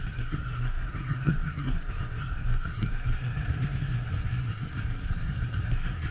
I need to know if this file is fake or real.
fake